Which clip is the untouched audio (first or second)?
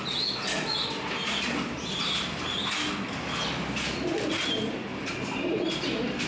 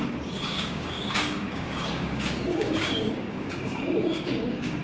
first